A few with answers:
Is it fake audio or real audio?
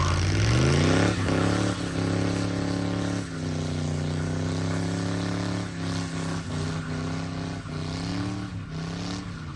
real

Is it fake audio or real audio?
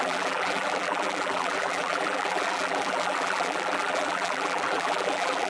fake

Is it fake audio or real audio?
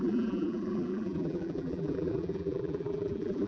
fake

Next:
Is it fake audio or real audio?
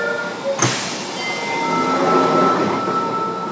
real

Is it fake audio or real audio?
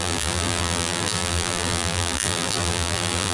fake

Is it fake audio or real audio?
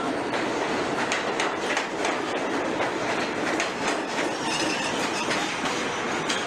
real